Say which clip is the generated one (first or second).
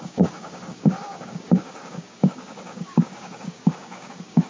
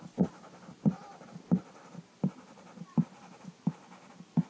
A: first